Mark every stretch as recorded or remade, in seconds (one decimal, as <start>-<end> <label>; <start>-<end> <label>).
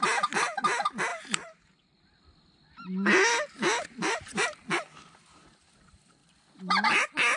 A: 0.0-1.1 recorded; 1.1-2.2 remade; 2.2-4.0 recorded; 4.0-4.7 remade; 4.7-7.4 recorded